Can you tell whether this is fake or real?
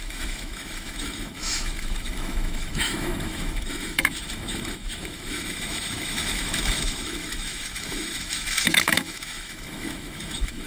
fake